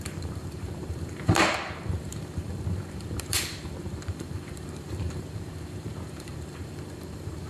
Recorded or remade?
remade